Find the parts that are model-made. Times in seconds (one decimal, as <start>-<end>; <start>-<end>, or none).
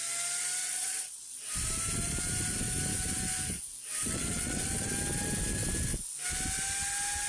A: 0.6-1.3; 4.0-4.9